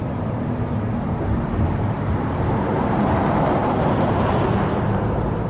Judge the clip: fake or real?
fake